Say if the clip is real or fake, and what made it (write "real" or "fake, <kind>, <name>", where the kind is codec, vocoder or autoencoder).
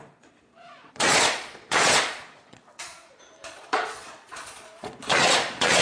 fake, vocoder, Vocos